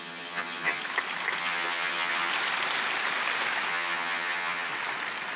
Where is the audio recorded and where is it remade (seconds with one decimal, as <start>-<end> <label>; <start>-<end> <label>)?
0.0-0.8 remade; 0.8-1.4 recorded; 1.4-2.3 remade; 2.3-3.7 recorded; 3.7-4.7 remade; 4.7-5.4 recorded